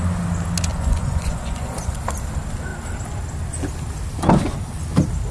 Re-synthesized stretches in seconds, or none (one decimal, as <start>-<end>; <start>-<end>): 0.7-2.0